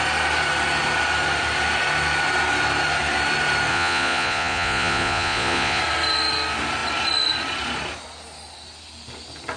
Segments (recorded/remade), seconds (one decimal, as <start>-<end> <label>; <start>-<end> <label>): 0.0-3.7 recorded; 3.7-5.8 remade; 5.8-9.6 recorded

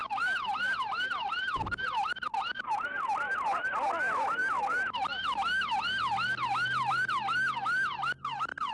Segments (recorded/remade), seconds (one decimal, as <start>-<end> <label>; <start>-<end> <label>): 0.0-8.7 recorded

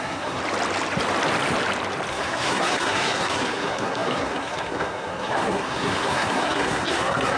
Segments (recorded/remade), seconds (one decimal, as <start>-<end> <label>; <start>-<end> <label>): 0.0-0.4 remade; 0.4-2.1 recorded; 2.1-7.4 remade

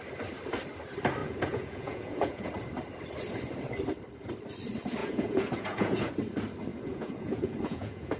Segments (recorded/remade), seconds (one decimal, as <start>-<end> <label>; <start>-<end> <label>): 0.0-1.2 recorded; 1.2-2.5 remade; 2.5-5.0 recorded; 5.0-6.1 remade; 6.1-6.7 recorded; 6.7-8.2 remade